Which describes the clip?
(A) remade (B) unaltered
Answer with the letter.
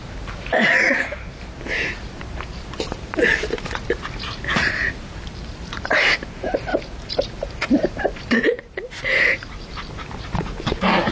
A